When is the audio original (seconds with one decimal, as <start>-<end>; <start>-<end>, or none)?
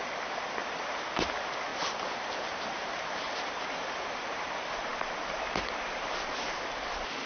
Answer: 0.0-1.7; 4.5-7.3